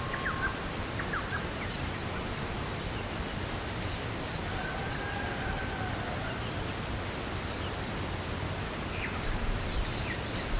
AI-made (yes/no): no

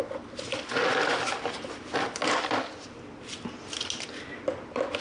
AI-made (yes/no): no